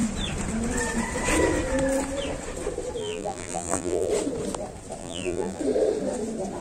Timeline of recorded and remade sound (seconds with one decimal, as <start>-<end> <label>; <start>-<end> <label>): 0.0-3.0 recorded; 3.0-4.1 remade; 4.1-5.0 recorded; 5.0-5.6 remade; 5.6-6.6 recorded